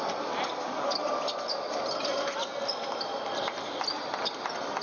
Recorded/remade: recorded